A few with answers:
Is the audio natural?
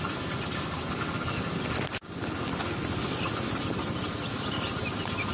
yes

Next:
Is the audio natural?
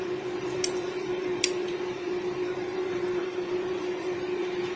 no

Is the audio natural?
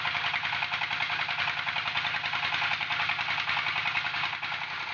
yes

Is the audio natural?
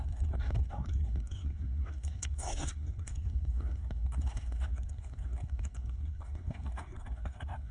no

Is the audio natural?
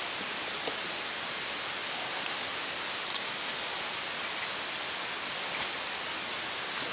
yes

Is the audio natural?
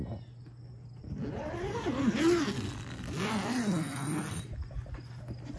yes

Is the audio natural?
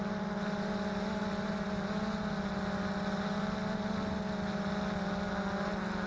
yes